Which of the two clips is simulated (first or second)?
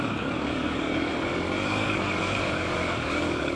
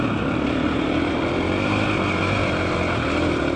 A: first